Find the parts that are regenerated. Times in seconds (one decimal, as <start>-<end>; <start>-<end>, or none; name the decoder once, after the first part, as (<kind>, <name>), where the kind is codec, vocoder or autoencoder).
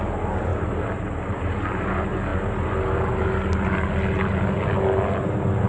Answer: 0.5-1.6 (vocoder, BigVGAN v2)